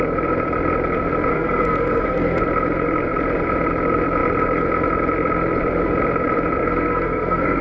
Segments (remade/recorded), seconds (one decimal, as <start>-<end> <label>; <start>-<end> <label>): 0.0-1.3 recorded; 1.3-2.4 remade; 2.4-6.6 recorded; 6.6-7.6 remade